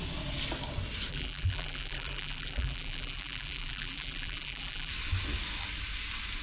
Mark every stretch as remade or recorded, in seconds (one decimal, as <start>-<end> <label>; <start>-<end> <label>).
0.0-1.1 recorded; 1.1-4.9 remade; 4.9-6.4 recorded